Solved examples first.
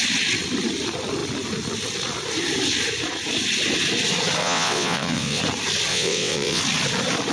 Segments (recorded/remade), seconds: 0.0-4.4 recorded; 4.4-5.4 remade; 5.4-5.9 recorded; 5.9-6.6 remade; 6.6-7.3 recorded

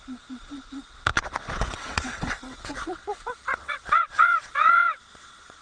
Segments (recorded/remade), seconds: 0.0-5.6 remade

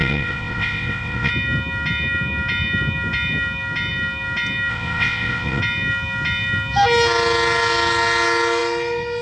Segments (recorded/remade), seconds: 0.0-1.3 remade; 1.3-4.7 recorded; 4.7-5.6 remade; 5.6-9.2 recorded

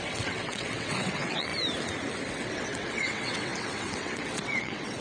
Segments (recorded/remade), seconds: 0.0-1.5 remade; 1.5-2.3 recorded; 2.3-5.0 remade

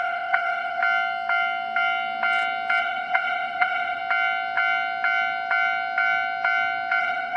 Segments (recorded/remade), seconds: 0.0-0.8 remade; 0.8-2.8 recorded; 2.8-4.0 remade; 4.0-7.0 recorded; 7.0-7.4 remade

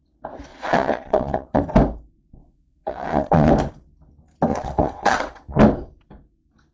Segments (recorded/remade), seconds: 0.0-0.5 recorded; 0.5-1.6 remade; 1.6-2.4 recorded; 2.4-3.5 remade; 3.5-4.5 recorded; 4.5-5.6 remade; 5.6-6.7 recorded